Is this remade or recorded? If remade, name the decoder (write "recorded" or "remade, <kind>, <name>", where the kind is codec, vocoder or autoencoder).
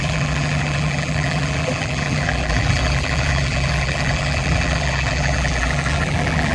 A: remade, vocoder, BigVGAN v2